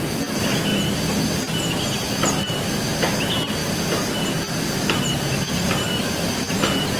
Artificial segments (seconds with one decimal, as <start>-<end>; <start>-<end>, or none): 0.7-1.2